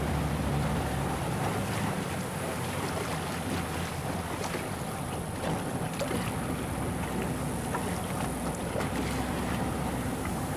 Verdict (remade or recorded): recorded